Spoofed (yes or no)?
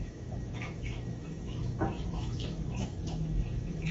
yes